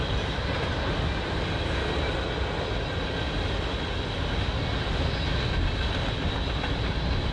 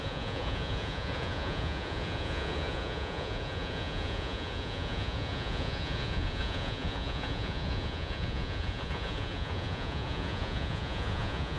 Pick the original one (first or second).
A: first